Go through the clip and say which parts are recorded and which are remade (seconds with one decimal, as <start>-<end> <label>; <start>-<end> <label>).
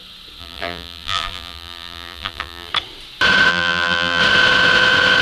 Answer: 0.0-0.4 recorded; 0.4-2.7 remade; 2.7-3.5 recorded; 3.5-4.2 remade; 4.2-5.2 recorded